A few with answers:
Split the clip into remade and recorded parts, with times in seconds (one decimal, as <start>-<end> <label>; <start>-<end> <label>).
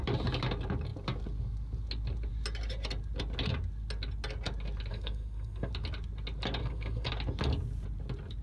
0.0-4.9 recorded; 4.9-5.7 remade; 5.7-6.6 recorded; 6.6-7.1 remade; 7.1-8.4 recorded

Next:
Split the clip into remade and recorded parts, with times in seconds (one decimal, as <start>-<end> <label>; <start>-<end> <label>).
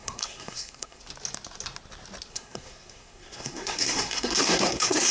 0.0-1.0 remade; 1.0-2.3 recorded; 2.3-5.1 remade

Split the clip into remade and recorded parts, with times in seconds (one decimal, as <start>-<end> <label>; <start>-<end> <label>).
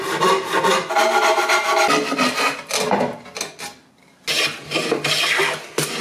0.0-4.6 recorded; 4.6-5.6 remade; 5.6-6.0 recorded